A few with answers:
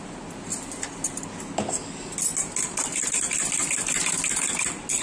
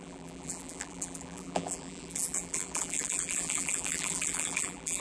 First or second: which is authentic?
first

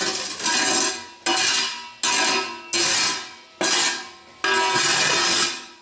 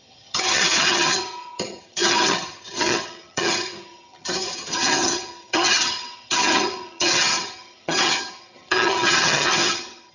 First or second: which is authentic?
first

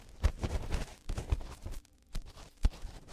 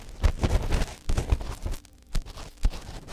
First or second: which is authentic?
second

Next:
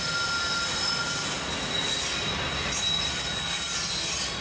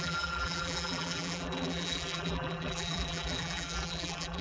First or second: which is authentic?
first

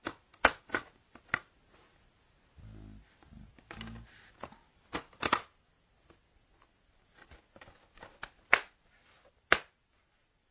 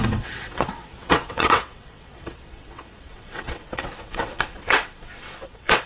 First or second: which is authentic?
first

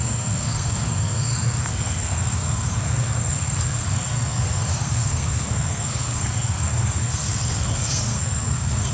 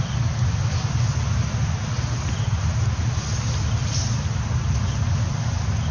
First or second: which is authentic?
second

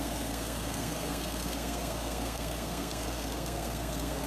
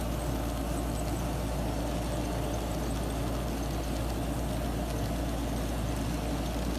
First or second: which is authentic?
second